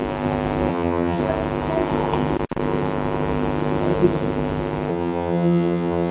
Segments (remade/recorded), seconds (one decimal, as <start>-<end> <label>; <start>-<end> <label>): 0.0-0.7 recorded; 0.7-1.2 remade; 1.2-4.9 recorded; 4.9-6.1 remade